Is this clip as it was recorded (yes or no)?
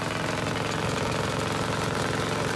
yes